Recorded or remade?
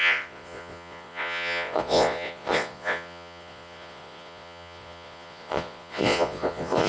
remade